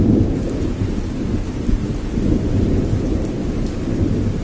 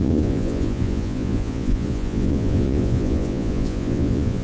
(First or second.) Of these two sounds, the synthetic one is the second